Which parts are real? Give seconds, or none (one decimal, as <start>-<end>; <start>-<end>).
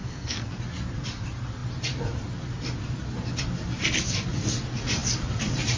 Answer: 0.6-5.8